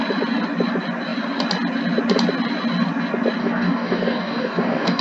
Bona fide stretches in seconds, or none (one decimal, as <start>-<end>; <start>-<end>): 0.0-3.4